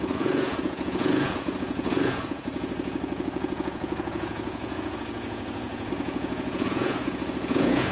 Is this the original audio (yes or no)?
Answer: no